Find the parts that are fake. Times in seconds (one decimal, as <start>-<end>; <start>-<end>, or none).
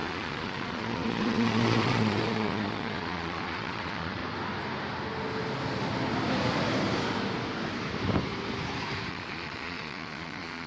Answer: 0.0-4.2; 9.1-10.7